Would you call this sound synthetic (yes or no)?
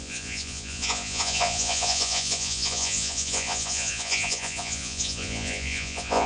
yes